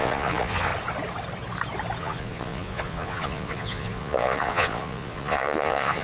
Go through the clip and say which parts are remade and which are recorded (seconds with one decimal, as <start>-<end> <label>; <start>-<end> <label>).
0.0-0.7 remade; 0.7-2.0 recorded; 2.0-6.0 remade